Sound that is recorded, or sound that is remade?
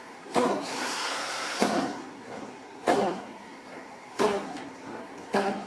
remade